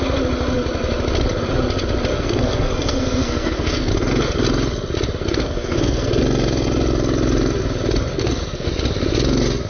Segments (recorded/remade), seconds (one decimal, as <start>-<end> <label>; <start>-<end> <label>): 0.0-2.1 recorded; 2.1-3.9 remade; 3.9-5.2 recorded; 5.2-6.2 remade; 6.2-8.1 recorded; 8.1-8.7 remade; 8.7-9.7 recorded

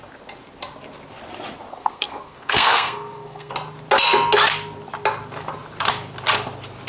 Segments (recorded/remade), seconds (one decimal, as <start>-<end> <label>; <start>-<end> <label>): 0.0-1.7 recorded; 1.7-3.5 remade; 3.5-6.9 recorded

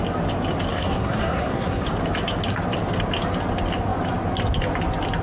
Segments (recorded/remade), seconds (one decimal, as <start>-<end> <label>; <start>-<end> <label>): 0.0-0.7 recorded; 0.7-1.9 remade; 1.9-5.2 recorded

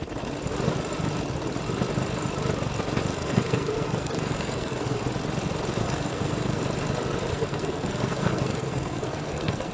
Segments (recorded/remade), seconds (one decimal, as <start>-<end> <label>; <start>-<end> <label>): 0.0-3.1 recorded; 3.1-5.0 remade; 5.0-5.8 recorded; 5.8-6.6 remade; 6.6-7.3 recorded; 7.3-9.7 remade